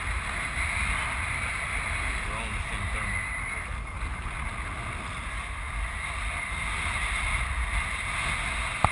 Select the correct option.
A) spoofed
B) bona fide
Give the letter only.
B